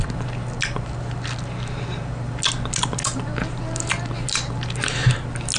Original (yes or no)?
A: yes